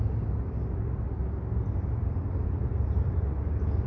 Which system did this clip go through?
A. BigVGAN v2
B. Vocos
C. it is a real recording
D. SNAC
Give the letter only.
C